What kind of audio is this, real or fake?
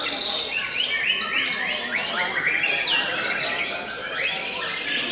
real